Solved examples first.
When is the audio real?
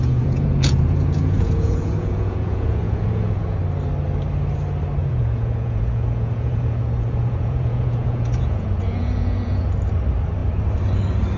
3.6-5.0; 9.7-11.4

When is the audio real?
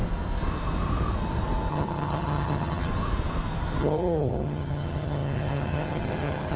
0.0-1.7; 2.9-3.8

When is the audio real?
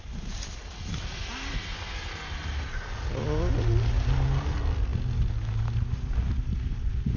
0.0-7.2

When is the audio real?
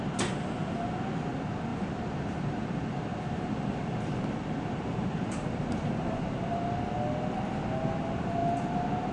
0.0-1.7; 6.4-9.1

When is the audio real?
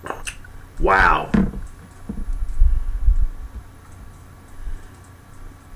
1.2-3.7